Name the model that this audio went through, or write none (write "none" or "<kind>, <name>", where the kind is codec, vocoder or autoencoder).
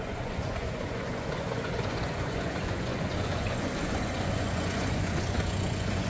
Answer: vocoder, Vocos